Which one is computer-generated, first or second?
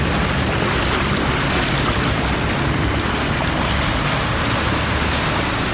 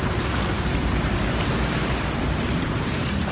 second